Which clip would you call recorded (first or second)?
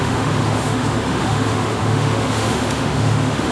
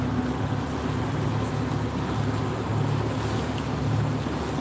second